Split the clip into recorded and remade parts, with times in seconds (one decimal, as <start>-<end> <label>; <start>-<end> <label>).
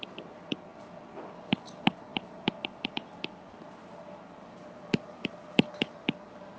0.0-6.6 recorded